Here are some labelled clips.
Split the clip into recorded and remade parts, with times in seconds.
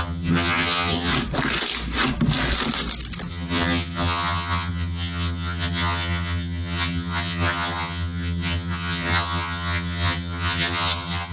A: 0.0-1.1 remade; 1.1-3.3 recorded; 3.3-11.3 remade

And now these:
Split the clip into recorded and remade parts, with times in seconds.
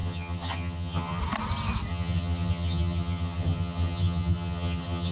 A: 0.0-1.2 remade; 1.2-1.9 recorded; 1.9-5.1 remade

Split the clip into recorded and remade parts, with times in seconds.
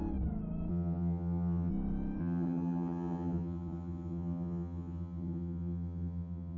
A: 0.0-0.7 recorded; 0.7-1.7 remade; 1.7-2.2 recorded; 2.2-6.6 remade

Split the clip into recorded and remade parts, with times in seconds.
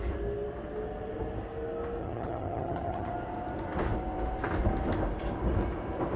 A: 0.0-2.0 recorded; 2.0-3.1 remade; 3.1-6.2 recorded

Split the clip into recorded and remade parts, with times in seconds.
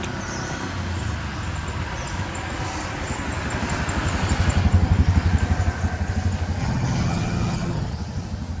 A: 0.0-6.6 recorded; 6.6-7.9 remade; 7.9-8.6 recorded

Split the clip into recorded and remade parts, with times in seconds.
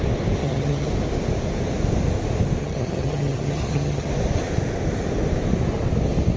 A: 0.0-0.4 recorded; 0.4-0.9 remade; 0.9-2.6 recorded; 2.6-4.1 remade; 4.1-6.4 recorded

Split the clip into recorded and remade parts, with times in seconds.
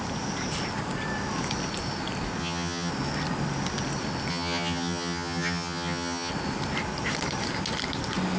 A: 0.0-2.4 recorded; 2.4-2.9 remade; 2.9-4.3 recorded; 4.3-6.3 remade; 6.3-8.4 recorded